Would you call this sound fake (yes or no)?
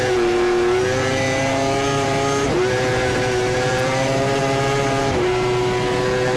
yes